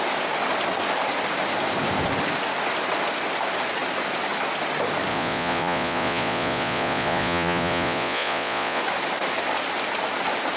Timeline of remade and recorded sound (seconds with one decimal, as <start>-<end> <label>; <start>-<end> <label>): 0.0-5.1 recorded; 5.1-8.8 remade; 8.8-10.6 recorded